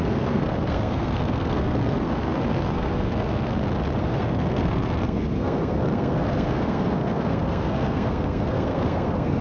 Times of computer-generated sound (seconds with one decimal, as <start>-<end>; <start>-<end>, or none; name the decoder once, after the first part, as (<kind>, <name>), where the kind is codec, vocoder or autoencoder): 0.0-3.5 (codec, SNAC); 4.0-9.4